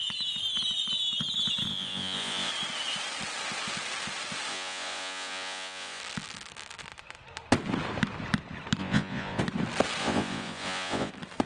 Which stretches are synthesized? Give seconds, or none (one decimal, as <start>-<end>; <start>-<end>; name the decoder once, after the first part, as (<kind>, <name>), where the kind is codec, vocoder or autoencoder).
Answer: 1.7-2.5 (vocoder, Vocos); 4.5-6.0; 8.8-9.4; 10.0-11.1